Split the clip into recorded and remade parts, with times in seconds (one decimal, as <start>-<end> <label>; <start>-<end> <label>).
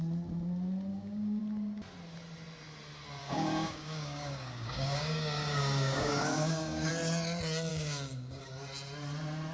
0.0-0.9 recorded; 0.9-1.4 remade; 1.4-3.2 recorded; 3.2-6.9 remade; 6.9-7.7 recorded; 7.7-8.4 remade; 8.4-9.5 recorded